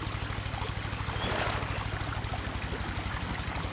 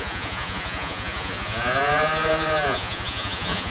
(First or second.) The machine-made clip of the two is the second